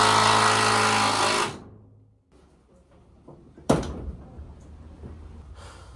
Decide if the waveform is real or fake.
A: real